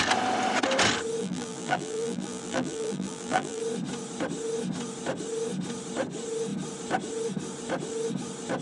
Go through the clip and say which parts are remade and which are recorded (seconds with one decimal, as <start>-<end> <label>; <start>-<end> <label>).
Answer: 0.0-1.2 recorded; 1.2-3.6 remade; 3.6-8.6 recorded